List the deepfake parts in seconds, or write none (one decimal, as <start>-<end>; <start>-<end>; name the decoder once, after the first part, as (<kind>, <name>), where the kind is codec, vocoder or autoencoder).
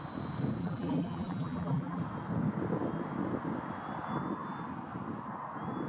0.6-2.0 (vocoder, BigVGAN v2)